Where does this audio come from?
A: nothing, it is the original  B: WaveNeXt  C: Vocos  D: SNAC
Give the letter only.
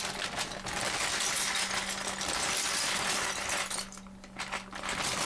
A